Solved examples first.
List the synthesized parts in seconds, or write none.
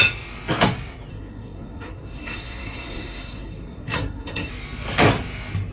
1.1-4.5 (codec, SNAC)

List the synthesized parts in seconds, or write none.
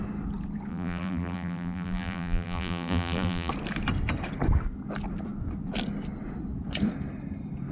0.7-3.5 (vocoder, BigVGAN v2)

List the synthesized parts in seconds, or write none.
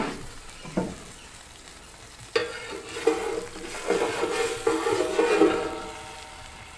none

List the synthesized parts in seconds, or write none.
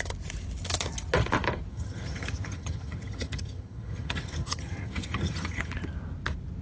1.7-5.7 (vocoder, HiFi-GAN)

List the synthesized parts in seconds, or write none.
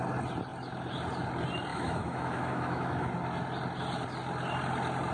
1.7-3.1 (autoencoder, DAC-VAE)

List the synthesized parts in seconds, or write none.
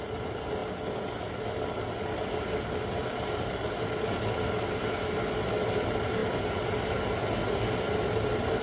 none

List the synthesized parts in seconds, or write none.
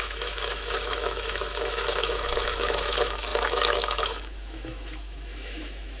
0.0-6.0 (autoencoder, DAC-VAE)